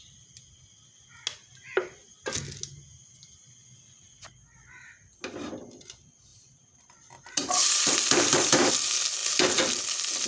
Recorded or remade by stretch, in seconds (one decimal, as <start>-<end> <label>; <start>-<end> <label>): 0.0-6.3 recorded; 6.3-8.7 remade; 8.7-10.3 recorded